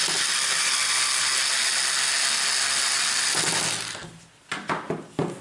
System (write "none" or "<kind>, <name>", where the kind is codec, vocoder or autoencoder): none